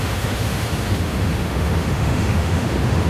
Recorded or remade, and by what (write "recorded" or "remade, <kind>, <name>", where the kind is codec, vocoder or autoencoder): remade, autoencoder, DAC-VAE